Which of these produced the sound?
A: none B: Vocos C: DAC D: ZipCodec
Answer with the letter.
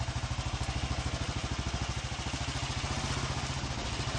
A